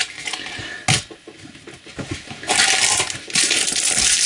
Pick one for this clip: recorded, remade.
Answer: recorded